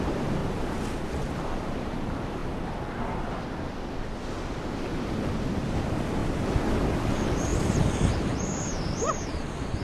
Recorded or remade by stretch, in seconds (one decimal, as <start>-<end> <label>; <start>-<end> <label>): 0.0-0.4 remade; 0.4-1.1 recorded; 1.1-2.4 remade; 2.4-5.8 recorded; 5.8-6.2 remade; 6.2-6.8 recorded; 6.8-9.8 remade